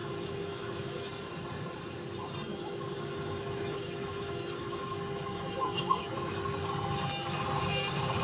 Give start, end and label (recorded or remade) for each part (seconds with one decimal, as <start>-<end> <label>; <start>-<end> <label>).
0.0-1.1 remade; 1.1-2.5 recorded; 2.5-6.4 remade; 6.4-8.2 recorded